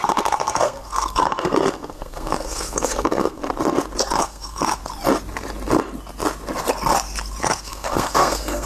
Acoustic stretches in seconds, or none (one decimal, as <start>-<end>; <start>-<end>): 3.4-4.2; 4.8-7.4